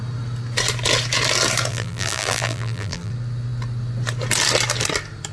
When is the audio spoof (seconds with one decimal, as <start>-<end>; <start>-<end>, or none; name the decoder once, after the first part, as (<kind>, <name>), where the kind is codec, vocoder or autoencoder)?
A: 1.7-3.1 (vocoder, BigVGAN v2)